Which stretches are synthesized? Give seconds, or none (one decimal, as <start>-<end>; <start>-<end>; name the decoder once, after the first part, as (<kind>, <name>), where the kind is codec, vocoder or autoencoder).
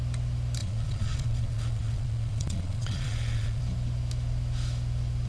0.6-3.6 (vocoder, Vocos)